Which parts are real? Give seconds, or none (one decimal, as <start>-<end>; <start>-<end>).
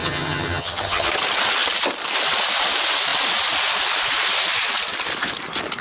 1.1-5.8